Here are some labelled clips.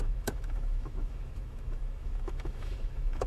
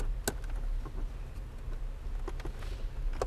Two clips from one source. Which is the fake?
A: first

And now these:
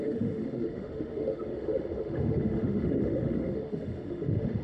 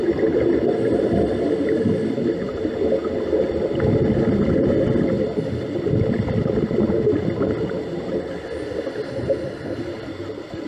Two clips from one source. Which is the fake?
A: first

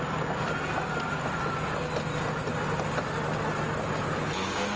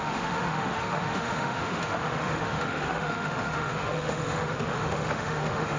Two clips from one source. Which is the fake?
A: second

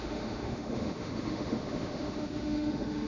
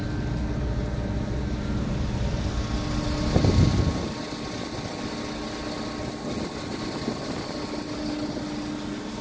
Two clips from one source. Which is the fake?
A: first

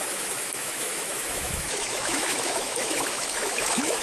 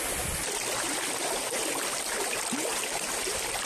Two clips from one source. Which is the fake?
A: first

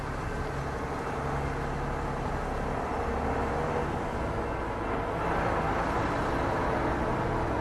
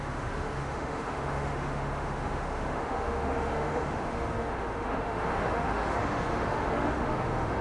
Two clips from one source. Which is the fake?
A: second